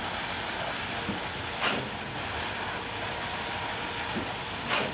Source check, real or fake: real